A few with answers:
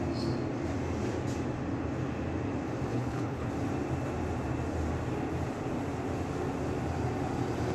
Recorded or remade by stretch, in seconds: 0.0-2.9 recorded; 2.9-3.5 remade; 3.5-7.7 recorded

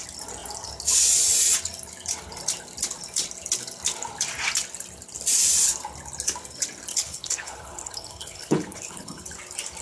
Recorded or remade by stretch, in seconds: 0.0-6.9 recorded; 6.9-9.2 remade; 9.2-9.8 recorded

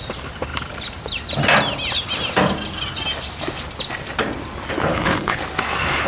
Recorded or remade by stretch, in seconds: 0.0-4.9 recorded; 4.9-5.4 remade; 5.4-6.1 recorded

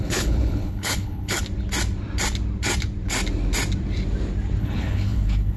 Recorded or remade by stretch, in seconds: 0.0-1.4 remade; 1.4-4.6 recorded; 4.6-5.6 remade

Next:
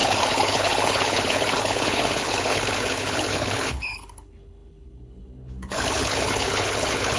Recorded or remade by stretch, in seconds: 0.0-7.2 remade

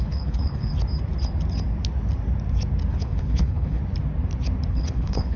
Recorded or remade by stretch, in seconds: 0.0-0.7 remade; 0.7-2.9 recorded; 2.9-3.8 remade; 3.8-4.7 recorded; 4.7-5.4 remade

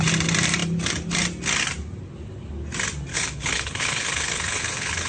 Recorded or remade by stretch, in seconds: 0.0-3.1 recorded; 3.1-5.1 remade